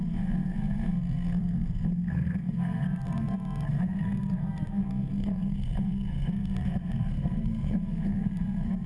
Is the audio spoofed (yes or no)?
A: yes